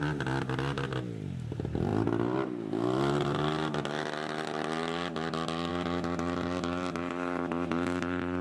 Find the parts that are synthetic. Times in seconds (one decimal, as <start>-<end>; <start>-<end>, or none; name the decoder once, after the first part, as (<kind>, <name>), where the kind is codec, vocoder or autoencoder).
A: none